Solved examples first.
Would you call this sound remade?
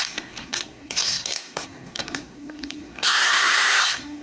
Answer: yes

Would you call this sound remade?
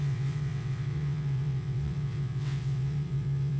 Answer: yes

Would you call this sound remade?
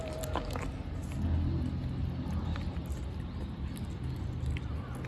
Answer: no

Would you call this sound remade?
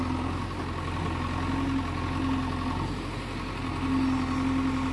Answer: no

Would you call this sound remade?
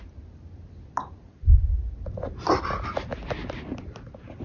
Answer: no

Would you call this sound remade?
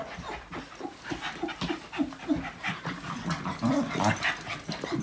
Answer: no